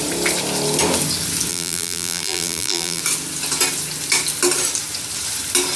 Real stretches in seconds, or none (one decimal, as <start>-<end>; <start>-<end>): 0.0-1.5; 3.0-5.8